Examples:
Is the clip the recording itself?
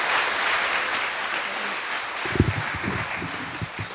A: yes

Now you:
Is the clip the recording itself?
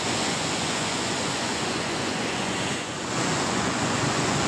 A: no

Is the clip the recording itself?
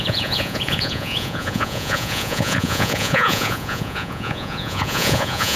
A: no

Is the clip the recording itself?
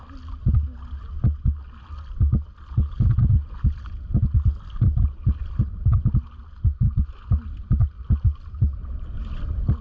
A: yes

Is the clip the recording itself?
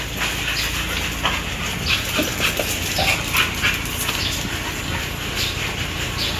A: yes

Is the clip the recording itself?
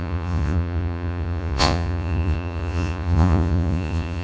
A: no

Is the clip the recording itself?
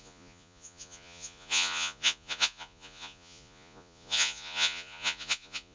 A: no